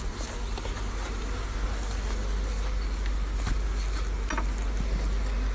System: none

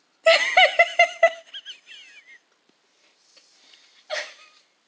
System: none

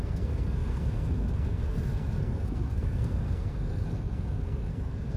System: codec, SNAC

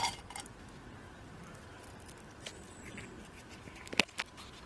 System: none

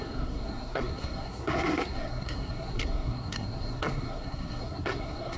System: codec, SNAC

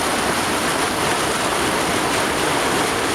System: none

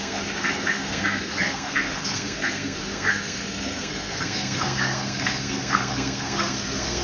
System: codec, SNAC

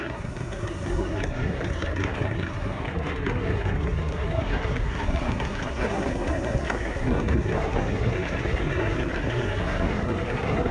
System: codec, SNAC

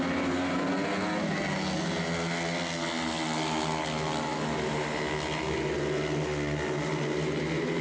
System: none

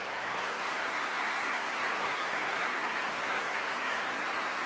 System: codec, SNAC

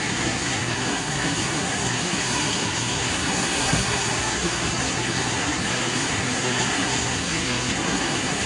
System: codec, SNAC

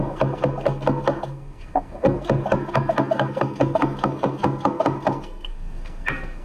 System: codec, SNAC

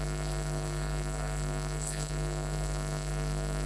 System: codec, SNAC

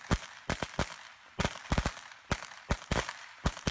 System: none